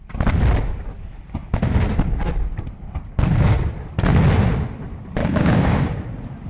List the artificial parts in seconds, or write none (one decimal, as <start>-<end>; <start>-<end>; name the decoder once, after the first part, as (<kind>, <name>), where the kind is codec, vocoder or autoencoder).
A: 5.2-5.9 (codec, DAC)